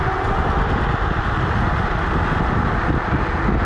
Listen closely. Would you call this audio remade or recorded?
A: recorded